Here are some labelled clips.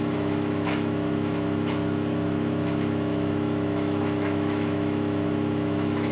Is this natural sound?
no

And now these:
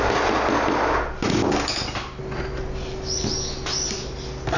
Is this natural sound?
yes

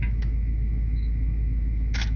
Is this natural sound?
no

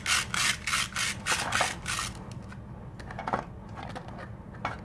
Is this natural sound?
yes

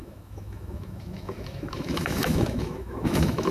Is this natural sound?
no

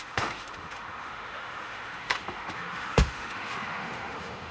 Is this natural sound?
no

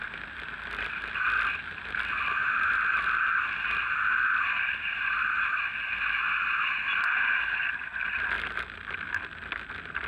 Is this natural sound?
yes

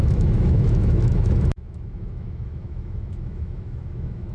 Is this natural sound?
no